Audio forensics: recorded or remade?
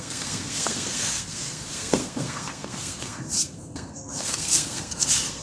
remade